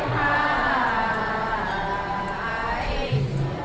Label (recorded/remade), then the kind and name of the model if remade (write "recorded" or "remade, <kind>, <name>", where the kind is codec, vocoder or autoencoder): recorded